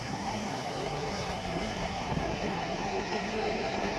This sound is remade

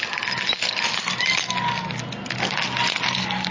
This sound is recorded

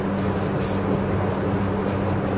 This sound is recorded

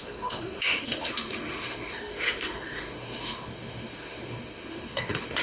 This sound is remade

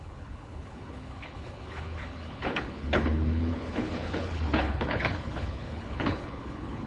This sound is remade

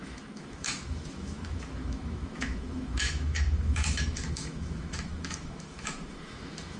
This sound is remade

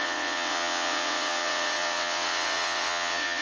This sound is remade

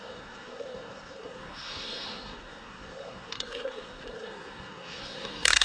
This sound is remade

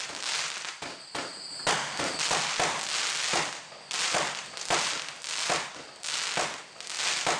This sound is recorded